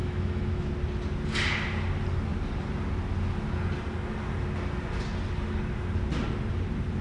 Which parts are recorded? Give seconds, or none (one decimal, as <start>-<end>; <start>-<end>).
0.7-7.0